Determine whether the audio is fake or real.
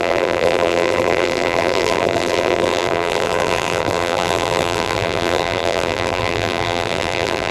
fake